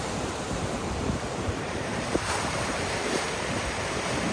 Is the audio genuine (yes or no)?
no